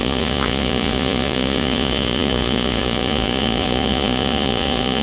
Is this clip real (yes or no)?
no